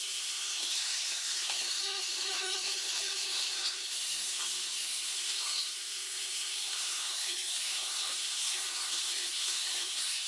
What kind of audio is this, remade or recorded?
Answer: remade